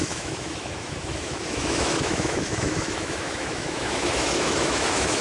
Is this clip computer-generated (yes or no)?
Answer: yes